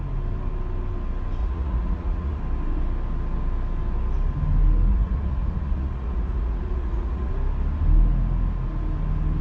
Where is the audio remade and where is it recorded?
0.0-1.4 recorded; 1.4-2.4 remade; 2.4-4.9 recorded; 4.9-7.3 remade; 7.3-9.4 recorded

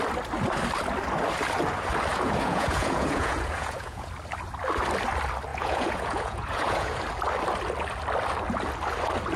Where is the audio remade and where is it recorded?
0.0-2.1 recorded; 2.1-4.1 remade; 4.1-5.5 recorded; 5.5-7.0 remade; 7.0-9.4 recorded

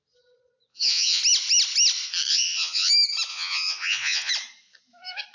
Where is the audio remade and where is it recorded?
0.0-0.7 recorded; 0.7-1.2 remade; 1.2-2.3 recorded; 2.3-2.9 remade; 2.9-3.3 recorded; 3.3-4.3 remade; 4.3-5.3 recorded

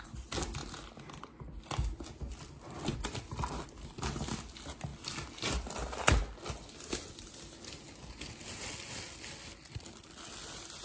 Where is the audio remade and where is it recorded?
0.0-10.8 recorded

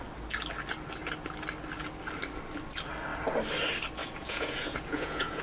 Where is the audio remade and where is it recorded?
0.0-4.0 recorded; 4.0-5.4 remade

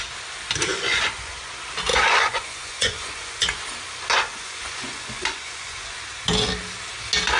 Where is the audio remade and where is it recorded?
0.0-0.7 recorded; 0.7-1.5 remade; 1.5-1.9 recorded; 1.9-3.6 remade; 3.6-4.3 recorded; 4.3-6.0 remade; 6.0-7.4 recorded

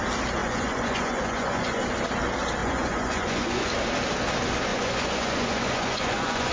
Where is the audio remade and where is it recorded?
0.0-0.4 recorded; 0.4-1.8 remade; 1.8-2.6 recorded; 2.6-3.7 remade; 3.7-4.7 recorded; 4.7-6.5 remade

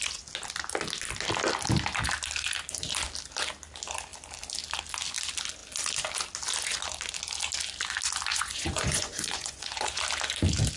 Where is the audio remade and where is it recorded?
0.0-8.3 recorded; 8.3-10.0 remade; 10.0-10.8 recorded